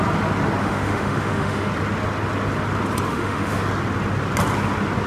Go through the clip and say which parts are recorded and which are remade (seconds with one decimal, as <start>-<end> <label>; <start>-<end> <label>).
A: 0.0-0.6 recorded; 0.6-1.7 remade; 1.7-3.1 recorded; 3.1-3.6 remade; 3.6-5.1 recorded